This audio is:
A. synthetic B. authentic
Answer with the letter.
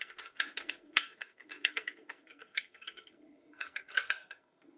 A